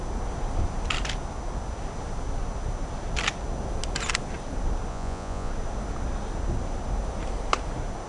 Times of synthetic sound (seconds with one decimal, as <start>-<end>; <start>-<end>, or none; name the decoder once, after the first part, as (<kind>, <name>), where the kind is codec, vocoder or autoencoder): 4.9-5.5 (vocoder, Vocos)